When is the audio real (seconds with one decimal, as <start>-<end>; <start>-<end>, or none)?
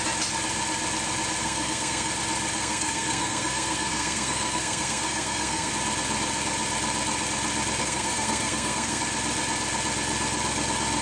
0.0-1.4; 2.1-2.6; 5.7-7.8; 9.0-11.0